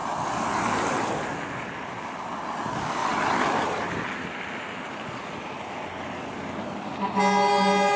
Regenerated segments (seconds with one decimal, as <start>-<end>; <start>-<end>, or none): none